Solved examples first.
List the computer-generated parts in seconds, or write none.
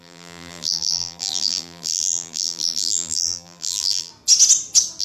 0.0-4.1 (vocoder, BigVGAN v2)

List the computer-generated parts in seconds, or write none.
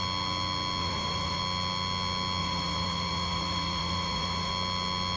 0.8-1.4 (vocoder, Vocos); 2.4-4.5